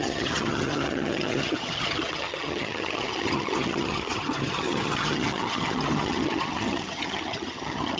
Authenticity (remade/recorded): remade